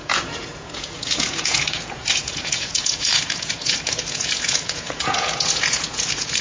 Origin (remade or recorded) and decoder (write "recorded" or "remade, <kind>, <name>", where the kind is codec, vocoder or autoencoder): remade, vocoder, Vocos